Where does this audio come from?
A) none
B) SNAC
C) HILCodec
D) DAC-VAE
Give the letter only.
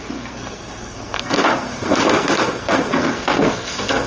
B